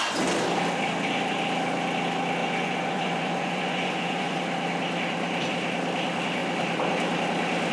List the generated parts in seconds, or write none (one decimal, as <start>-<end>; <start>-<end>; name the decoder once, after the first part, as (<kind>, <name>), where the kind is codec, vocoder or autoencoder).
2.4-4.4 (vocoder, Vocos)